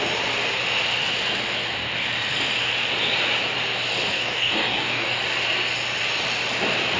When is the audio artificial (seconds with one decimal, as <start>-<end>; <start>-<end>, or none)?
4.1-5.2